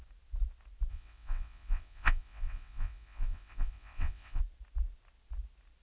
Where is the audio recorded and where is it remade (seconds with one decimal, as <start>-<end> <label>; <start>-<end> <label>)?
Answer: 0.0-0.9 recorded; 0.9-4.4 remade; 4.4-5.8 recorded